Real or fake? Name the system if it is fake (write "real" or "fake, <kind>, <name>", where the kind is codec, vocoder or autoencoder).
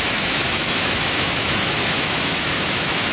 fake, autoencoder, DAC-VAE